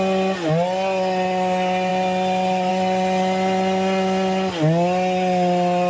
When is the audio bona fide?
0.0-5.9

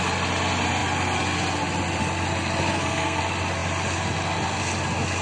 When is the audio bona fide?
0.0-2.7; 3.2-5.2

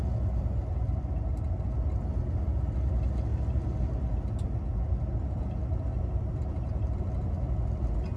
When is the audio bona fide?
0.0-8.2

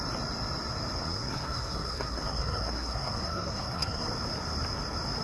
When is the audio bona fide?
0.0-1.0; 4.1-5.2

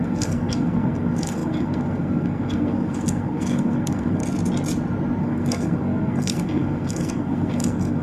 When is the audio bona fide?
4.2-5.2

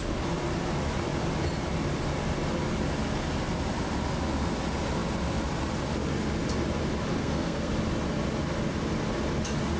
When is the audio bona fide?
0.0-7.2; 7.7-9.8

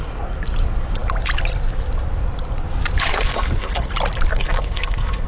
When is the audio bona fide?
0.0-3.1; 3.9-4.3

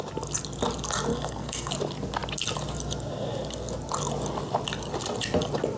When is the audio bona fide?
0.0-1.1; 1.7-5.8